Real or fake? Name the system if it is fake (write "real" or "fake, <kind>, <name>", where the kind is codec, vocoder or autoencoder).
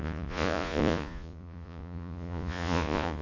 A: fake, vocoder, Vocos